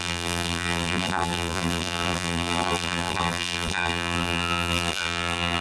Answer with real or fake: fake